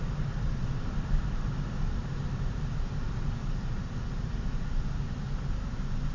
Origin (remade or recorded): recorded